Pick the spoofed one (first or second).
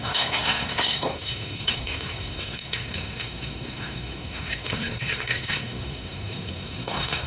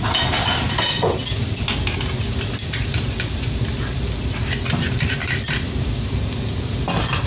first